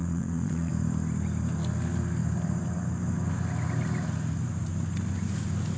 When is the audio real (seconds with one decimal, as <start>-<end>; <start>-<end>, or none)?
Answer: 0.7-5.8